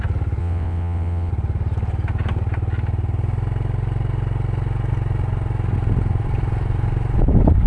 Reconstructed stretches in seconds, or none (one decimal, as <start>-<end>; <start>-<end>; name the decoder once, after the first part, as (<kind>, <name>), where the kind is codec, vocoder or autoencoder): 0.4-1.3 (vocoder, WaveNeXt)